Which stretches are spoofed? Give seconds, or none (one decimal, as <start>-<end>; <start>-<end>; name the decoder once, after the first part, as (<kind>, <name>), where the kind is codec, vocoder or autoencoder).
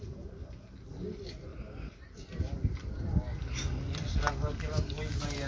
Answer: none